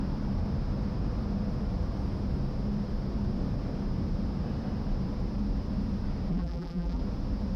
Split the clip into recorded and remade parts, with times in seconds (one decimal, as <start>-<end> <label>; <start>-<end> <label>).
0.0-6.3 recorded; 6.3-7.0 remade; 7.0-7.6 recorded